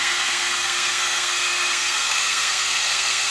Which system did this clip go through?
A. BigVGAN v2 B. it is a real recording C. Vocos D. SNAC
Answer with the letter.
D